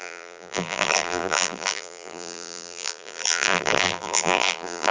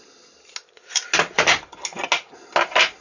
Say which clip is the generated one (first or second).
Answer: first